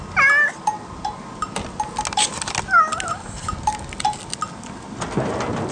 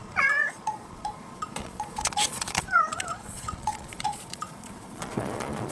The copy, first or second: second